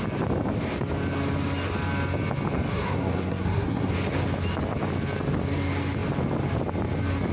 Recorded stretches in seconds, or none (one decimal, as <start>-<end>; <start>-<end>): 0.0-2.7; 3.9-7.3